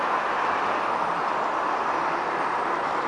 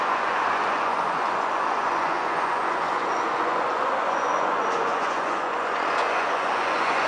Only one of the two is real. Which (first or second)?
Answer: first